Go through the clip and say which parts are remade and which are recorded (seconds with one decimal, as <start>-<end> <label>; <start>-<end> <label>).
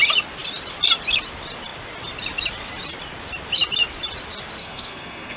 0.0-4.6 recorded; 4.6-5.4 remade